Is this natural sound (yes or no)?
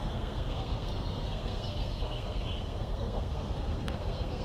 no